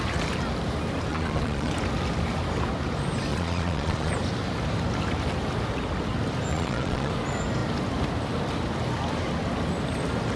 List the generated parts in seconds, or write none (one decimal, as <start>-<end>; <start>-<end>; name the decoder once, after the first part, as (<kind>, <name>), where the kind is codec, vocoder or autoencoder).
1.1-1.7 (vocoder, Vocos); 3.3-4.1; 6.5-7.1

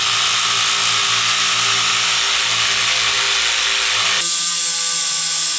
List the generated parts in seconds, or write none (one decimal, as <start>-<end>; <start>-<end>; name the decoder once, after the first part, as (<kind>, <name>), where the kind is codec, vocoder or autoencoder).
5.0-5.6 (vocoder, Vocos)

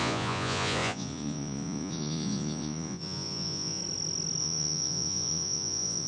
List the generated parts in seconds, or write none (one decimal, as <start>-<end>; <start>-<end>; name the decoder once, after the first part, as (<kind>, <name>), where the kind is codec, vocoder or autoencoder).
0.0-3.8 (vocoder, Vocos); 4.4-6.1

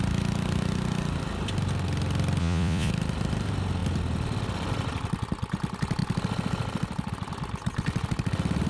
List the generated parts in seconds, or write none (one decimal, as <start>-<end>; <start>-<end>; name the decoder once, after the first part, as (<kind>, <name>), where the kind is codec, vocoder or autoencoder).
2.4-2.9 (vocoder, Vocos)